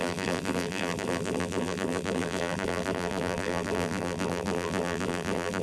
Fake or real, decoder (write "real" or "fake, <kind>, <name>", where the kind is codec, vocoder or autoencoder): fake, vocoder, BigVGAN v2